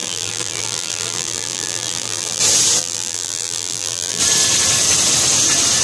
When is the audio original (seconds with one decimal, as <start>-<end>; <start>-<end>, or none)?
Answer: 2.4-2.8; 4.2-5.8